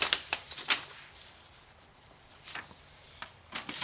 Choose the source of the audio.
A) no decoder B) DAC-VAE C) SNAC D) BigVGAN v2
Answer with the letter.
D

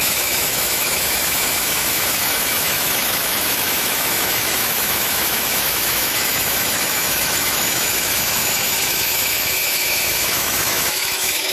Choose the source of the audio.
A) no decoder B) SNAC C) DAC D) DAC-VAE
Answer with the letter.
D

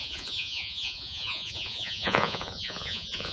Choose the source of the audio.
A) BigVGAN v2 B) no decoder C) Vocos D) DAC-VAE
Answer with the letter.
C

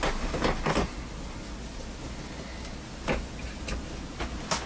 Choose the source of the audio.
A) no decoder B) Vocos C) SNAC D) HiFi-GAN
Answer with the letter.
A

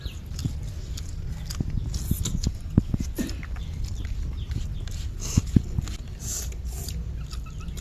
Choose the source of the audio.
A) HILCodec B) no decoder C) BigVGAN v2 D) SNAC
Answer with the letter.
B